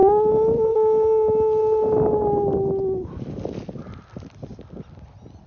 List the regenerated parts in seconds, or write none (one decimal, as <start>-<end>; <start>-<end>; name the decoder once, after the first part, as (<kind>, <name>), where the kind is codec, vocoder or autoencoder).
none